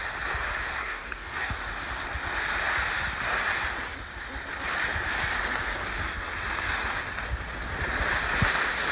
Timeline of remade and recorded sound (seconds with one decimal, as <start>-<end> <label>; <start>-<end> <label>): 0.0-0.8 recorded; 0.8-1.5 remade; 1.5-8.9 recorded